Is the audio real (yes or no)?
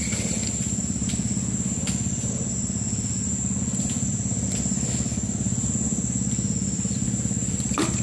yes